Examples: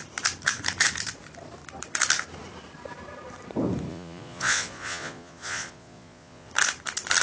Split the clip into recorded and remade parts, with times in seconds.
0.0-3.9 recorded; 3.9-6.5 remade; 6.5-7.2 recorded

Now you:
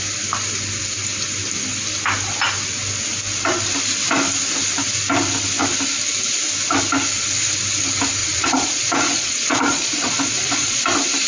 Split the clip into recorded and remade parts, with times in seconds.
0.0-8.2 recorded; 8.2-10.8 remade; 10.8-11.3 recorded